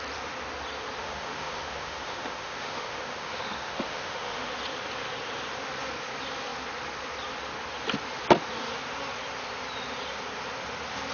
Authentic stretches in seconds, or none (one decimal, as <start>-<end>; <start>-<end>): 0.0-1.0; 4.5-11.1